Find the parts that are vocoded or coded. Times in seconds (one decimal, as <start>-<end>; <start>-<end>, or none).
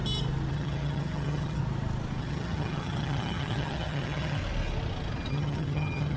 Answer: 0.5-1.6; 2.2-4.4; 5.3-6.2